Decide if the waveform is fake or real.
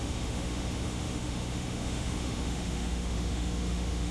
fake